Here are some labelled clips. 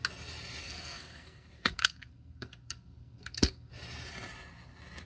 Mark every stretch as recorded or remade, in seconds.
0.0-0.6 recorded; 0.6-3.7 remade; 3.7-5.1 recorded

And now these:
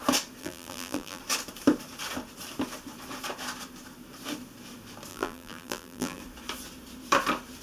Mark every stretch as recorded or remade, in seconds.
0.0-0.4 recorded; 0.4-1.2 remade; 1.2-5.1 recorded; 5.1-6.2 remade; 6.2-7.6 recorded

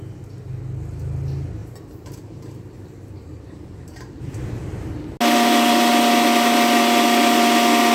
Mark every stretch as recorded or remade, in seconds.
0.0-1.6 recorded; 1.6-4.5 remade; 4.5-7.9 recorded

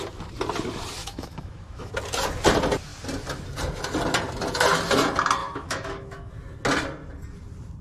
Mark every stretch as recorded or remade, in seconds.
0.0-1.0 recorded; 1.0-1.9 remade; 1.9-5.4 recorded; 5.4-6.3 remade; 6.3-7.8 recorded

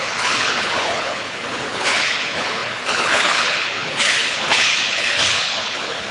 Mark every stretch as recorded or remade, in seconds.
0.0-6.1 remade

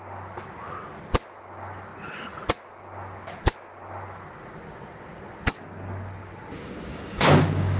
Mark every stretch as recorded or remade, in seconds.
0.0-6.9 recorded; 6.9-7.8 remade

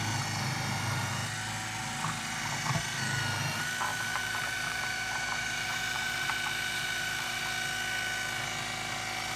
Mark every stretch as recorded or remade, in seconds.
0.0-3.9 recorded; 3.9-7.4 remade; 7.4-9.4 recorded